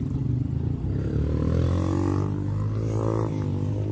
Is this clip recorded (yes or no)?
yes